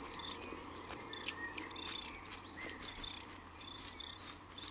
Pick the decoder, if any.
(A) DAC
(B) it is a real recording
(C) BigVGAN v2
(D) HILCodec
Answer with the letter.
B